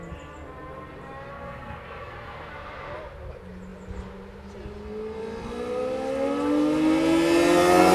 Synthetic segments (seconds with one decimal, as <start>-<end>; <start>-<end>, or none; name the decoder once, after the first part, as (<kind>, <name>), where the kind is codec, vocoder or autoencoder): 1.3-2.5 (codec, SNAC)